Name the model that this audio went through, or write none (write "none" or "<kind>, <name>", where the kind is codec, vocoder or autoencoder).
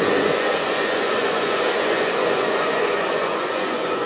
vocoder, Vocos